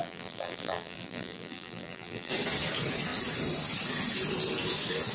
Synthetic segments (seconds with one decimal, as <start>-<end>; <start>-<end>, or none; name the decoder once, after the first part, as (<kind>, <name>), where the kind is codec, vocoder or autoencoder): 0.0-2.3 (vocoder, BigVGAN v2)